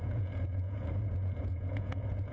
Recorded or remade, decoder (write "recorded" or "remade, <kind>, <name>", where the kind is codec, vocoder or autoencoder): remade, vocoder, Vocos